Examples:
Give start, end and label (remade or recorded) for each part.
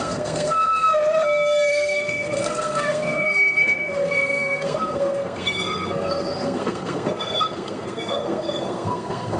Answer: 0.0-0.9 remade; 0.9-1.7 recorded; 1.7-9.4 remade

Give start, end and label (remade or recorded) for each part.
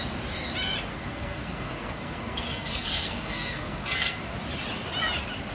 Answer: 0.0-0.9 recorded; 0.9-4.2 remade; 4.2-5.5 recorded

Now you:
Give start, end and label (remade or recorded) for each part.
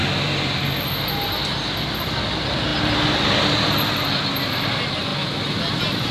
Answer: 0.0-6.1 recorded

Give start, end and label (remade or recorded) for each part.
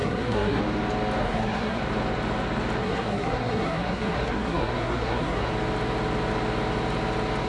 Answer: 0.0-0.6 remade; 0.6-1.2 recorded; 1.2-1.8 remade; 1.8-2.8 recorded; 2.8-5.5 remade; 5.5-7.5 recorded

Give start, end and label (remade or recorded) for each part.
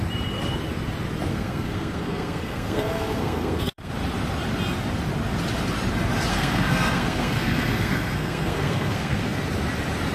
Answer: 0.0-1.3 recorded; 1.3-3.9 remade; 3.9-6.3 recorded; 6.3-9.4 remade; 9.4-10.1 recorded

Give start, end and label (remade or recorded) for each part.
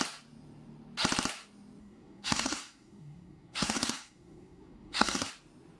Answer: 0.0-1.8 recorded; 1.8-5.3 remade; 5.3-5.8 recorded